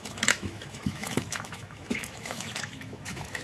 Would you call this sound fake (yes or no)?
yes